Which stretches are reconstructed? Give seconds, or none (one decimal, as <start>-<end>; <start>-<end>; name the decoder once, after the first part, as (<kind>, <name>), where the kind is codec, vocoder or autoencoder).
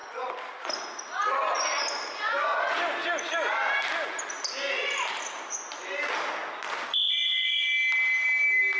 none